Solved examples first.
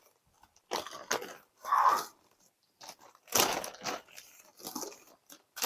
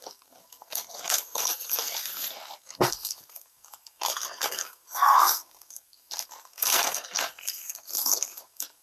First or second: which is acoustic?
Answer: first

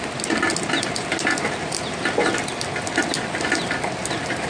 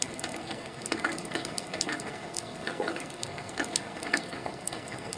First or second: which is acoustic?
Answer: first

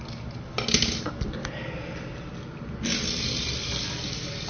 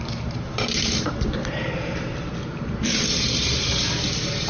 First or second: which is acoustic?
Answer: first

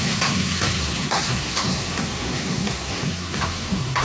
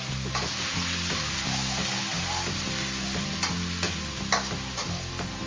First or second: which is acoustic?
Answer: second